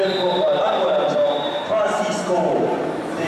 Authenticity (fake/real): fake